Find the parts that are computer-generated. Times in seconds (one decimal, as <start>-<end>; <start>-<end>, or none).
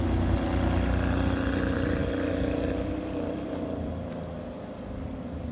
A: none